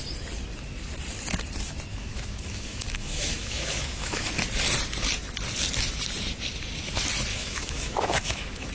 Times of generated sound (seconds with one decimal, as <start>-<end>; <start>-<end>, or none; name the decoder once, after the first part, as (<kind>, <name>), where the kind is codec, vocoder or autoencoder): 1.9-4.3 (autoencoder, DAC-VAE); 7.3-8.7